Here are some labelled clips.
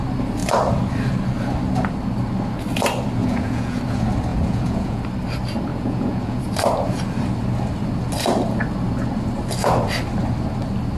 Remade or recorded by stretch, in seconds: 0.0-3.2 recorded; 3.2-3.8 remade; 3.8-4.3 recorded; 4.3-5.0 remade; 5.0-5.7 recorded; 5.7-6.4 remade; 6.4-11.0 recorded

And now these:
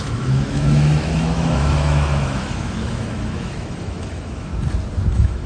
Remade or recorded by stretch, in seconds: 0.0-4.5 remade; 4.5-5.1 recorded; 5.1-5.5 remade

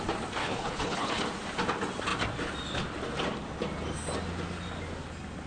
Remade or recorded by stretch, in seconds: 0.0-0.4 recorded; 0.4-1.2 remade; 1.2-5.5 recorded

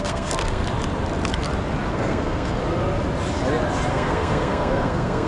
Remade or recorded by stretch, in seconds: 0.0-0.6 remade; 0.6-1.9 recorded; 1.9-2.6 remade; 2.6-3.9 recorded; 3.9-5.3 remade

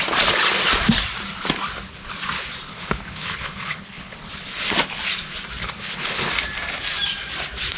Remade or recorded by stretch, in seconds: 0.0-2.7 recorded; 2.7-4.3 remade; 4.3-5.6 recorded; 5.6-6.3 remade; 6.3-7.8 recorded